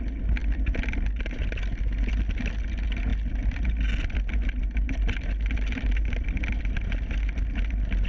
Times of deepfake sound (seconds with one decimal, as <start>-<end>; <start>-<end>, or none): none